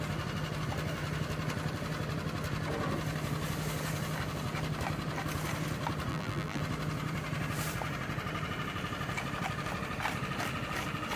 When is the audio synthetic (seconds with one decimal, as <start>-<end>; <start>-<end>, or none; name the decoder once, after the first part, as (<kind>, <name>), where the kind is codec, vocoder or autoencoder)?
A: 6.1-6.6 (vocoder, BigVGAN v2)